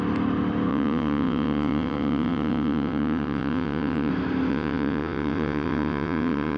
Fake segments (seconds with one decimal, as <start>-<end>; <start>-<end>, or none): 0.7-4.1; 4.5-6.6